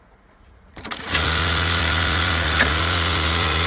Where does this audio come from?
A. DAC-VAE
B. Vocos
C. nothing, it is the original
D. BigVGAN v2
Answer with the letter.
B